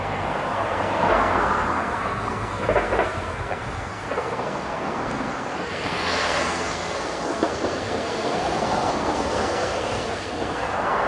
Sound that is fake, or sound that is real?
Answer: fake